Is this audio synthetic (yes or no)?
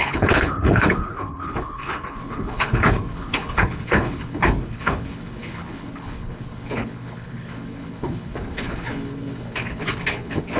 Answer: yes